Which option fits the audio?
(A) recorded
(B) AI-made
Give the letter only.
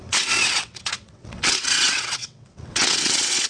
B